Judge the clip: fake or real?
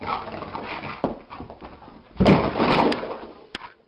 real